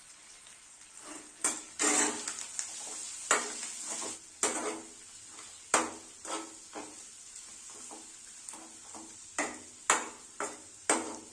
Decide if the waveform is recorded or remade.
recorded